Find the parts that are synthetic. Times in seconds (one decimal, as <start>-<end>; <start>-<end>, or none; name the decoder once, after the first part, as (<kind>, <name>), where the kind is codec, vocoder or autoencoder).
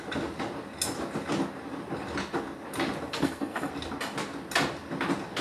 3.1-3.7 (codec, SNAC)